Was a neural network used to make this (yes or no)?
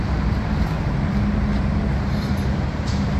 yes